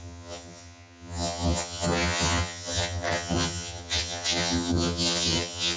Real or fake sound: fake